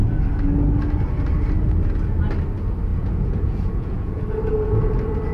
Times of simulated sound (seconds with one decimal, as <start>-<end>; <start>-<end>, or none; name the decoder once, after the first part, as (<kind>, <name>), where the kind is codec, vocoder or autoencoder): 2.9-4.2 (vocoder, Vocos)